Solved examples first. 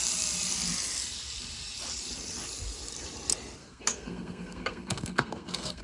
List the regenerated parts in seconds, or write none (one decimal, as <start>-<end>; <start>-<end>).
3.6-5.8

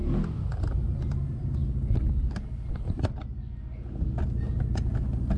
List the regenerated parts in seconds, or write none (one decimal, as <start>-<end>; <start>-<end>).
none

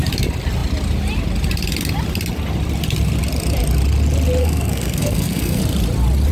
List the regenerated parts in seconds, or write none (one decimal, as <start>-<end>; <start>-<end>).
4.4-5.6

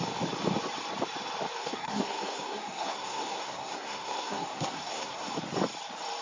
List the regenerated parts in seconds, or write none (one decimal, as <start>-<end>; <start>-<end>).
1.6-5.3

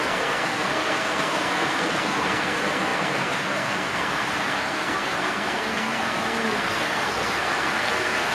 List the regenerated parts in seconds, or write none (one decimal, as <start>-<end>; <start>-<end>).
0.0-8.3

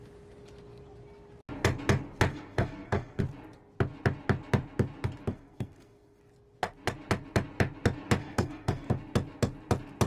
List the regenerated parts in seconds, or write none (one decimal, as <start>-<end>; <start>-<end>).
2.3-3.2; 5.3-6.2; 8.2-8.9

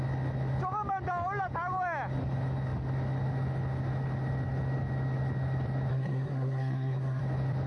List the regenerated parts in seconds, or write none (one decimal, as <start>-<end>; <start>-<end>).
5.9-7.2

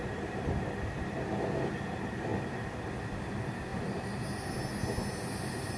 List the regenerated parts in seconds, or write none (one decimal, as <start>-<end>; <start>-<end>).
none